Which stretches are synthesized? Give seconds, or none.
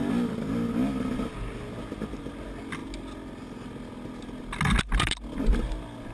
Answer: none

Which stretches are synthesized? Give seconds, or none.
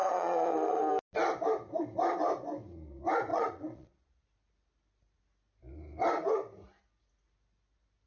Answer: 0.0-0.9 (vocoder, Vocos); 3.3-4.2